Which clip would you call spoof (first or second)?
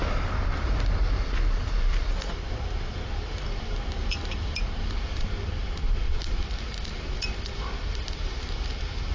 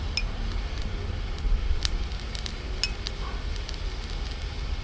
first